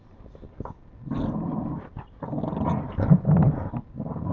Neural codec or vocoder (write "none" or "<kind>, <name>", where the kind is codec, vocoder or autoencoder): none